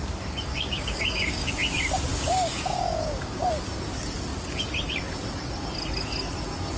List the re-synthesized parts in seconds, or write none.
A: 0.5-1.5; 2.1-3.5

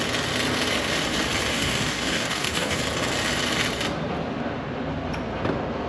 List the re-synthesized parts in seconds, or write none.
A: 1.5-2.8

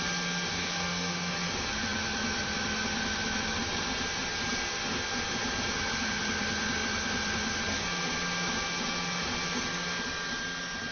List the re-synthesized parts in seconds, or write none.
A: 0.5-1.3

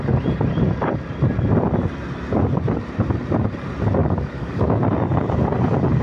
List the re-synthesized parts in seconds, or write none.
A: 4.0-4.8

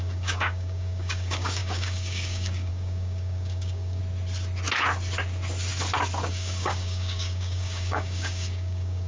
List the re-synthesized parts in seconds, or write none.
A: 0.0-4.0; 6.3-9.1

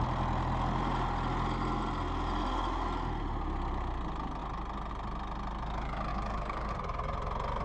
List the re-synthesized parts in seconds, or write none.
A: 6.1-6.7

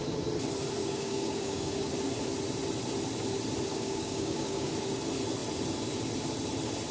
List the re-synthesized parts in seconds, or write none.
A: 0.8-1.9; 3.7-4.7

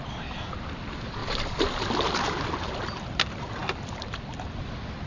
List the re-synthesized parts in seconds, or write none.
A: none